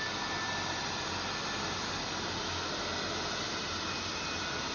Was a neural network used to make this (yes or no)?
no